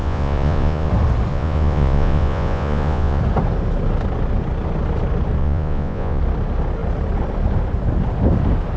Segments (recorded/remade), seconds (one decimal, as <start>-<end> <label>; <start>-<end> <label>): 0.0-0.9 remade; 0.9-1.3 recorded; 1.3-3.2 remade; 3.2-5.4 recorded; 5.4-6.2 remade; 6.2-8.8 recorded